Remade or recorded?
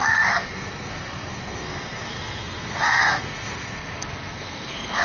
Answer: remade